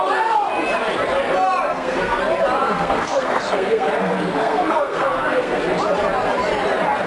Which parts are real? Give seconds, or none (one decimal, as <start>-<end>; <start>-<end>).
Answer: 0.0-1.7; 2.2-2.6; 5.6-7.1